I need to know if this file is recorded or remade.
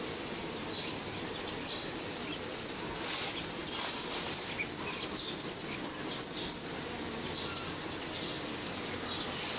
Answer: recorded